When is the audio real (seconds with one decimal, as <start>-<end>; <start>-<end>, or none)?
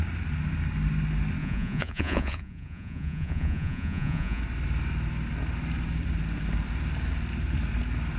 0.0-1.4; 4.4-8.2